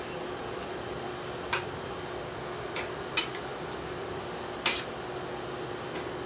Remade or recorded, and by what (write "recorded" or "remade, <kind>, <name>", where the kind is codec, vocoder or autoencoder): recorded